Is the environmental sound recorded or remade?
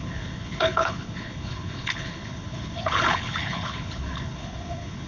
remade